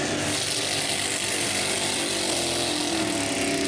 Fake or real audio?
real